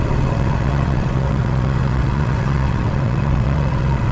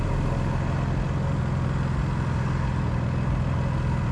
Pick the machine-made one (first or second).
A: first